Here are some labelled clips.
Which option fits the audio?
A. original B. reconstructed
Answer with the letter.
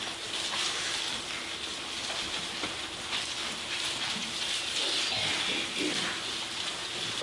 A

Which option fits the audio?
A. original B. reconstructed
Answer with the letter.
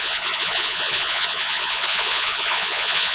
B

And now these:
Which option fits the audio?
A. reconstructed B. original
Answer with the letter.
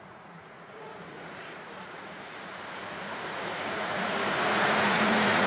A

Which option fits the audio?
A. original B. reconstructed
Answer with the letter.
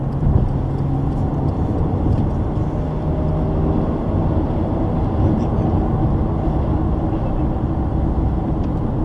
A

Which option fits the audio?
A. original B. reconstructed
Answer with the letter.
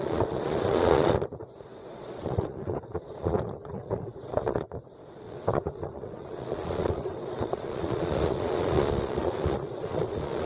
B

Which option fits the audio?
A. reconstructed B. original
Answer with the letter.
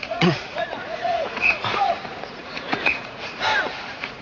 A